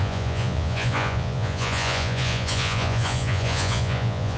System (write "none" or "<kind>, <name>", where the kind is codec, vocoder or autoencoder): vocoder, Vocos